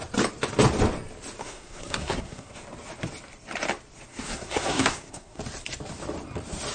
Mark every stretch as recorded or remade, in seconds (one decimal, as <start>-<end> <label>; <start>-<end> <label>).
0.0-1.4 recorded; 1.4-2.6 remade; 2.6-4.1 recorded; 4.1-5.4 remade; 5.4-6.7 recorded